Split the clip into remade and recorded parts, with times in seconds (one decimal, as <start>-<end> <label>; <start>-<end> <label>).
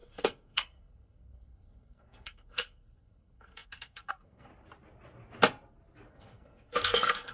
0.0-4.5 remade; 4.5-6.1 recorded; 6.1-7.3 remade